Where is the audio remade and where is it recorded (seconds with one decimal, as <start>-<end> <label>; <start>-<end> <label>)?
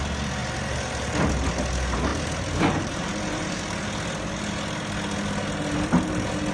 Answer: 0.0-0.4 recorded; 0.4-1.1 remade; 1.1-2.1 recorded; 2.1-3.6 remade; 3.6-6.5 recorded